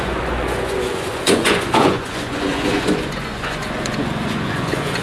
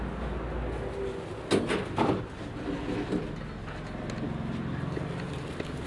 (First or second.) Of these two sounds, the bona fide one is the second